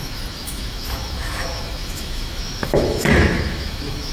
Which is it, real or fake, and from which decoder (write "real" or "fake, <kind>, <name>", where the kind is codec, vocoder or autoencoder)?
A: fake, autoencoder, DAC-VAE